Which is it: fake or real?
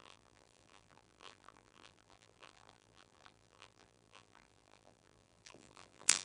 fake